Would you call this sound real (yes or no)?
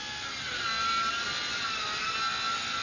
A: yes